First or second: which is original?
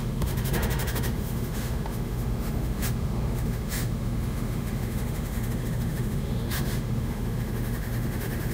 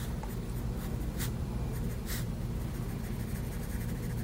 second